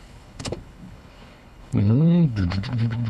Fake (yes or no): yes